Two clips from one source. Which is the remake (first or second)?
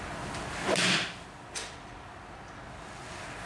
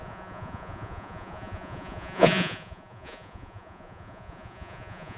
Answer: second